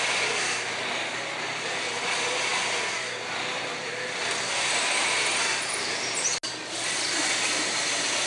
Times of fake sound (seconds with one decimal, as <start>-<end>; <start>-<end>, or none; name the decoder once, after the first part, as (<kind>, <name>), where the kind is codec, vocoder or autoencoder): none